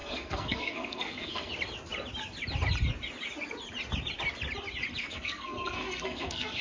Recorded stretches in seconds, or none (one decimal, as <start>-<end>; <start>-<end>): 1.5-5.0